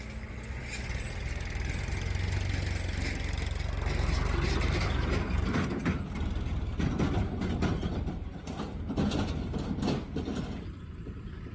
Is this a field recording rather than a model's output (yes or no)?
yes